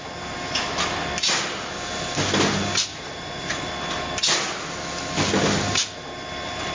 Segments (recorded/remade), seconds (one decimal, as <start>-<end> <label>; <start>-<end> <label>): 0.0-2.9 recorded; 2.9-3.7 remade; 3.7-6.7 recorded